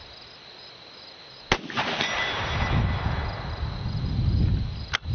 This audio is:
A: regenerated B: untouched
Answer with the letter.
B